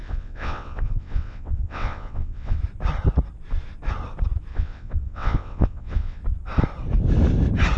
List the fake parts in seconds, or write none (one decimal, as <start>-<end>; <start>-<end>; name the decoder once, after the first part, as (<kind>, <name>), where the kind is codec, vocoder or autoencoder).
0.0-2.6 (vocoder, WaveNeXt); 4.5-6.2